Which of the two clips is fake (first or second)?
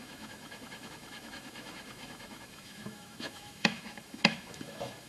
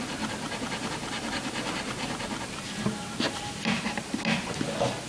first